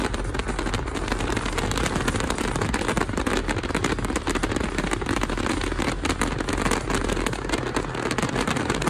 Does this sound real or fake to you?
real